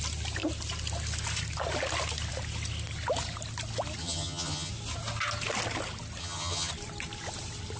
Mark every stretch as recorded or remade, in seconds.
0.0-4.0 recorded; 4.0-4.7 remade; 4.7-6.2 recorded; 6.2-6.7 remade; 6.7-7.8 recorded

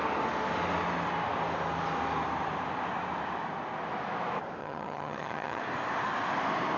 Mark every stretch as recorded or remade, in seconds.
0.0-4.6 recorded; 4.6-5.6 remade; 5.6-6.8 recorded